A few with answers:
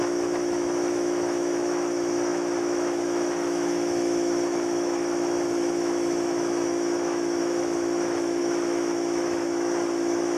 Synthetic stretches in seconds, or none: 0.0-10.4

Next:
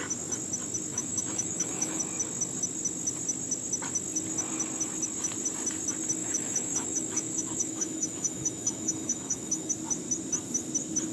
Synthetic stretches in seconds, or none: 0.9-2.0; 6.2-9.7

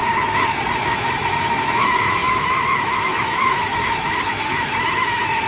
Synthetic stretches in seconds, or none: 0.8-5.5

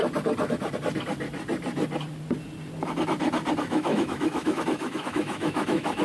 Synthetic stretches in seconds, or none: 3.6-6.0

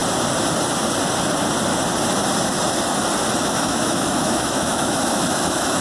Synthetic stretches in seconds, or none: 3.4-5.8

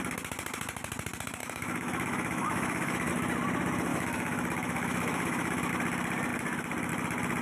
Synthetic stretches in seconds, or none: 1.4-3.1; 3.9-5.7

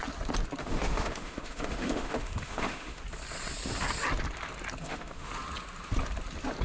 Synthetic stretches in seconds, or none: 0.6-3.0; 4.8-5.3